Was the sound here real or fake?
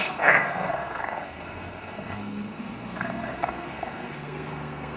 fake